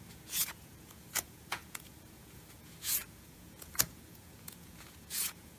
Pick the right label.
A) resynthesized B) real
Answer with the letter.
A